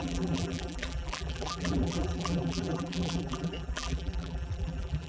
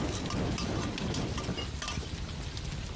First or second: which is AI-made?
first